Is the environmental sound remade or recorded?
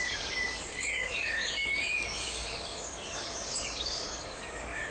remade